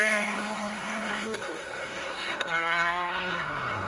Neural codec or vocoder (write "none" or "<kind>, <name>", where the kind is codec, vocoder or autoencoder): codec, SNAC